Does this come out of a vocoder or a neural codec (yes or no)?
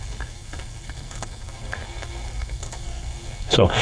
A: yes